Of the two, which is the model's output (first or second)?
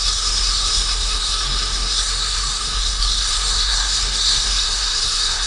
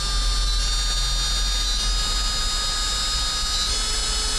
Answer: first